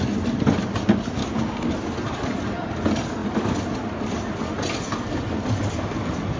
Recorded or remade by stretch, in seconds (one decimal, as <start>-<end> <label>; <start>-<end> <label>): 0.0-1.2 recorded; 1.2-1.7 remade; 1.7-6.4 recorded